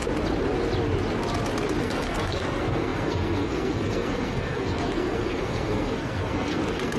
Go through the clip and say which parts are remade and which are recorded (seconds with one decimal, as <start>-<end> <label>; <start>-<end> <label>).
0.0-1.8 recorded; 1.8-7.0 remade